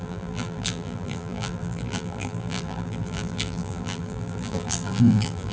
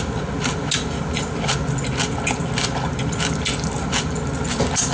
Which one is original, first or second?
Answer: second